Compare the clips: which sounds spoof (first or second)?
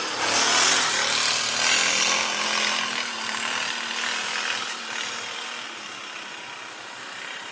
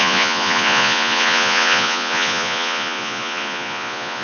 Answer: second